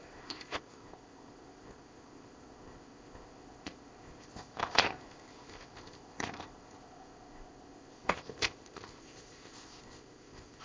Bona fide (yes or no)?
no